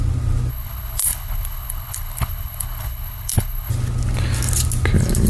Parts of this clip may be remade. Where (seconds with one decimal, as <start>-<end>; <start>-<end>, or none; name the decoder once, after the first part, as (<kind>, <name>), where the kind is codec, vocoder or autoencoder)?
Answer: 0.5-3.7 (codec, HILCodec)